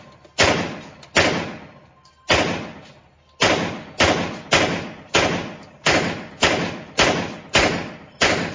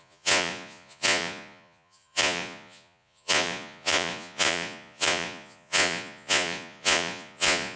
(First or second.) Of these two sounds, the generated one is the second